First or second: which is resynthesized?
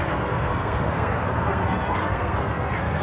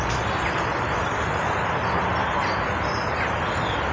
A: first